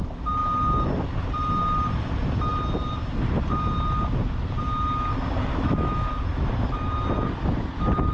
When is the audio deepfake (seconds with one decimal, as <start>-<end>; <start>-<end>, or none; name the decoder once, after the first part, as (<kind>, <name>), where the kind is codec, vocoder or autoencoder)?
5.5-6.1 (autoencoder, DAC-VAE)